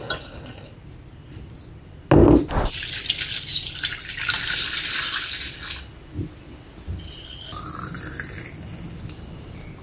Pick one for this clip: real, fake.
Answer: real